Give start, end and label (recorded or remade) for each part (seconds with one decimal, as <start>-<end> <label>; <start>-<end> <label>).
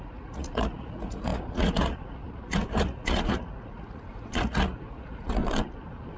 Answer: 0.0-5.4 remade; 5.4-6.2 recorded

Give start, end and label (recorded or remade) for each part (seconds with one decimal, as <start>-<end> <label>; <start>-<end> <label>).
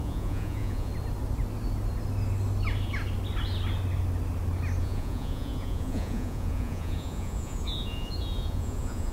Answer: 0.0-0.9 remade; 0.9-4.8 recorded; 4.8-9.1 remade